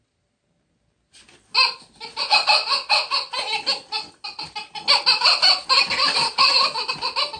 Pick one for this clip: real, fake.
real